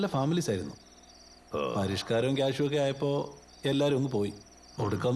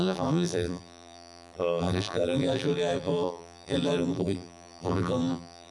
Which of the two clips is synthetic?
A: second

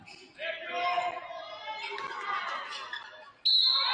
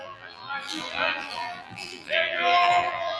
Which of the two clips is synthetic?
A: second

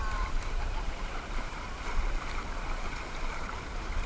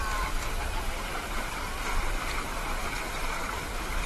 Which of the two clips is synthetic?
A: first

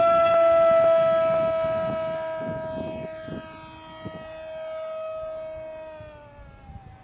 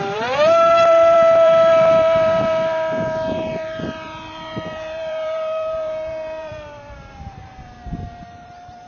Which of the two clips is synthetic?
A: second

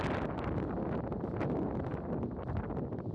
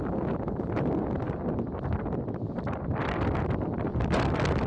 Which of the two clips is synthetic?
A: second